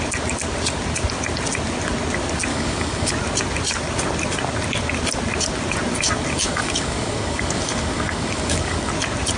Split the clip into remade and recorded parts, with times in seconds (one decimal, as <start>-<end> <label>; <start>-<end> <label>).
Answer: 0.0-2.5 recorded; 2.5-3.1 remade; 3.1-6.3 recorded; 6.3-8.9 remade; 8.9-9.4 recorded